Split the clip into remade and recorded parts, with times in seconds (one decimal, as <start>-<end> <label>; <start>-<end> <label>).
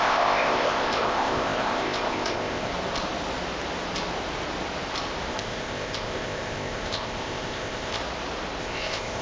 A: 0.0-2.7 remade; 2.7-5.3 recorded; 5.3-8.0 remade; 8.0-8.6 recorded; 8.6-9.2 remade